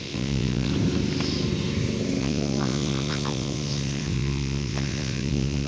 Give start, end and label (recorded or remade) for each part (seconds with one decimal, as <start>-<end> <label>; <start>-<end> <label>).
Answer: 0.0-0.7 remade; 0.7-2.2 recorded; 2.2-5.7 remade